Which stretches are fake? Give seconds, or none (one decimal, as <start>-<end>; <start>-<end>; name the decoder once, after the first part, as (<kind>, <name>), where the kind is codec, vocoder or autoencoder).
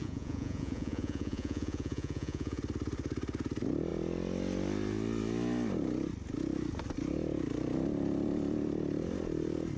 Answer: 0.0-2.6 (vocoder, Vocos)